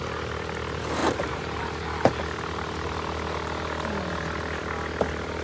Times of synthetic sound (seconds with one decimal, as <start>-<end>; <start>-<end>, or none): 1.0-1.6